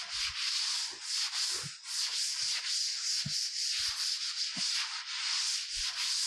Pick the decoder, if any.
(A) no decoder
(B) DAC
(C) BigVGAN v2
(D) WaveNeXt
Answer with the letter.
A